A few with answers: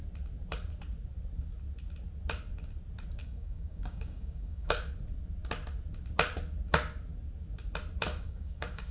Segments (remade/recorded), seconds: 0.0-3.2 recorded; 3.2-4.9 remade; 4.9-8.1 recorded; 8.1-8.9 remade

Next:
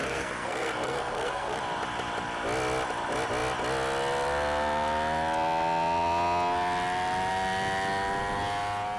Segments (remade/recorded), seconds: 0.0-1.6 remade; 1.6-9.0 recorded

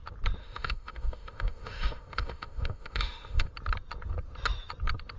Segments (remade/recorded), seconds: 0.0-0.4 recorded; 0.4-3.5 remade; 3.5-5.2 recorded